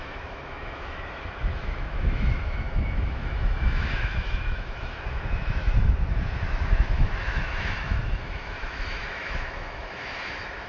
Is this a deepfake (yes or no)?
yes